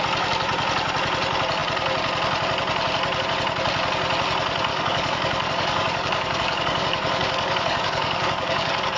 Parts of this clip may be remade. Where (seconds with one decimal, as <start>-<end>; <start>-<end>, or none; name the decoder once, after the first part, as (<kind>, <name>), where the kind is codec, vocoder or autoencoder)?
4.7-9.0 (codec, DAC)